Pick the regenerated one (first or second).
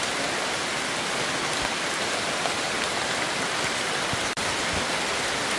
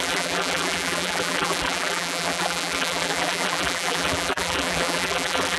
second